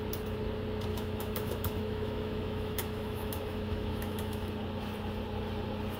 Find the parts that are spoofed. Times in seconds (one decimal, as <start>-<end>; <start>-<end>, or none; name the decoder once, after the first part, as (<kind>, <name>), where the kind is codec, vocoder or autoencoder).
0.9-4.5 (autoencoder, DAC-VAE)